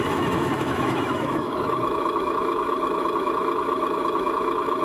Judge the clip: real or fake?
fake